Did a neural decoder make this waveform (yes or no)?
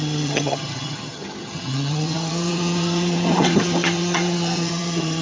yes